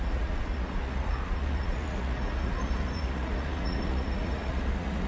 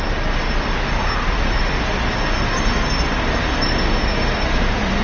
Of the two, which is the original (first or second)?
second